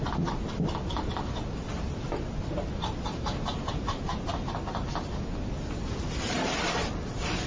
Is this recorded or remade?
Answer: recorded